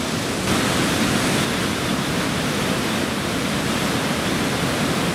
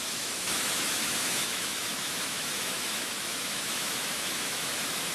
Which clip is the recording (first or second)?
first